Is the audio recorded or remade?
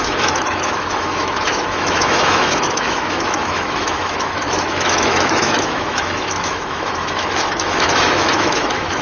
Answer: remade